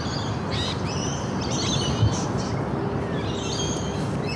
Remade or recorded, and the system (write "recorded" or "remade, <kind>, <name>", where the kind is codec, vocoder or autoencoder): recorded